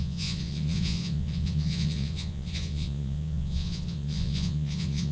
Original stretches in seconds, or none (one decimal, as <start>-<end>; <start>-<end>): none